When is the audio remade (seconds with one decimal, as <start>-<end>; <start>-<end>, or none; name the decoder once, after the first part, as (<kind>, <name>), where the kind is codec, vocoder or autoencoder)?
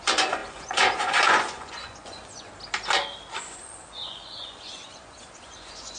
0.0-2.5 (vocoder, Vocos); 3.4-6.0